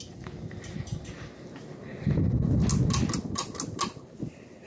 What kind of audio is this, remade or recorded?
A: recorded